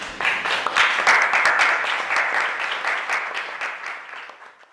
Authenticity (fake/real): real